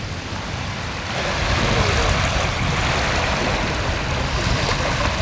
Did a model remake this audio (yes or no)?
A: no